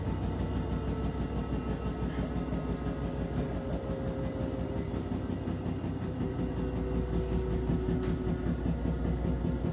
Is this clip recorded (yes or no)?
yes